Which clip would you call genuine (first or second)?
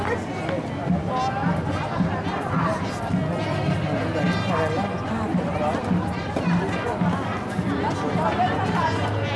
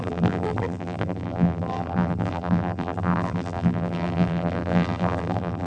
first